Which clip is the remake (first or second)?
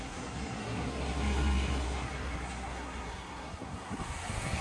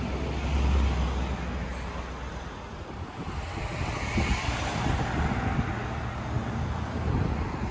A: first